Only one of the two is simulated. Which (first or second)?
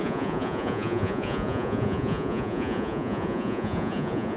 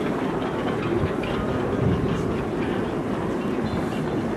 first